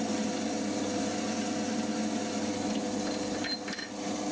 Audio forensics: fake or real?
real